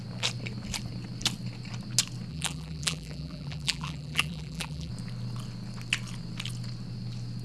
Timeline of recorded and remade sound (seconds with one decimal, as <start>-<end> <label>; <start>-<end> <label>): 0.0-2.3 recorded; 2.3-4.9 remade; 4.9-7.4 recorded